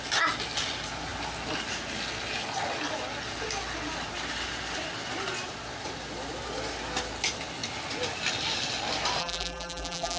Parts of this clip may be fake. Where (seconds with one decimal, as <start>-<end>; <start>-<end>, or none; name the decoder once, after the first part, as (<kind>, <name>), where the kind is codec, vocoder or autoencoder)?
9.2-10.2 (vocoder, BigVGAN v2)